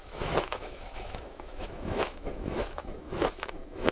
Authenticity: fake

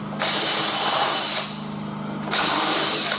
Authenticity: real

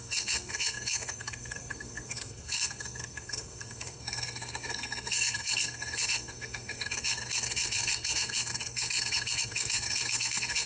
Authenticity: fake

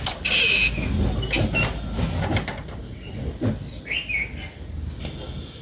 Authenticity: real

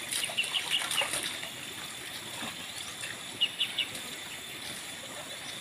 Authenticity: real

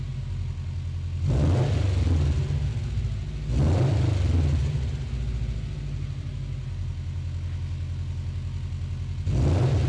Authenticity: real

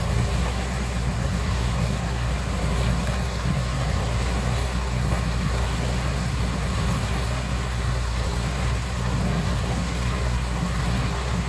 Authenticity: fake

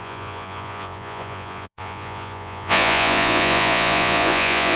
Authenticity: fake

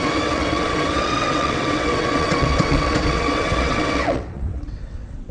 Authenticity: fake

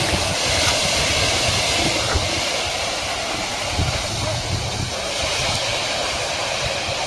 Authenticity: real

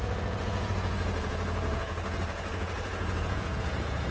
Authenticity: fake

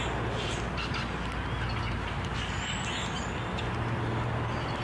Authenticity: real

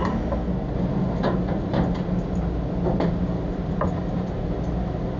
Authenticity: real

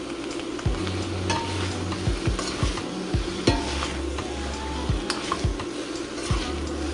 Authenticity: real